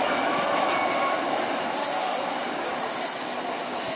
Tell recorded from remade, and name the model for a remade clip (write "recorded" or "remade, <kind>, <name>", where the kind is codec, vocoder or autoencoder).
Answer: recorded